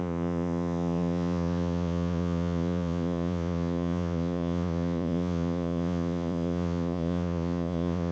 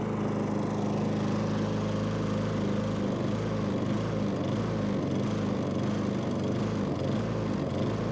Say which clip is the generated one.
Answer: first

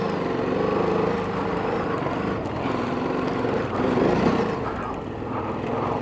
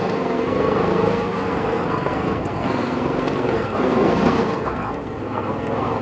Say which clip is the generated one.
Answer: second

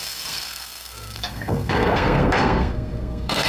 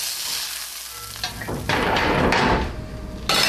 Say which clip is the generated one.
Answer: first